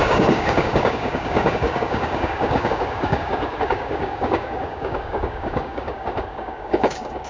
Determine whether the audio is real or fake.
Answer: fake